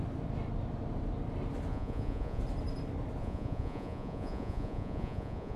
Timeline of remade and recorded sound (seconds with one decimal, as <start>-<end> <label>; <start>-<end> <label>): 0.0-1.7 recorded; 1.7-2.4 remade; 2.4-3.2 recorded; 3.2-5.6 remade